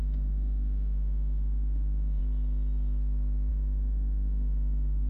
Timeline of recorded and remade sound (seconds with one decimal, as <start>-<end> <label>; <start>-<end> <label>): 0.0-2.2 remade; 2.2-3.5 recorded; 3.5-5.1 remade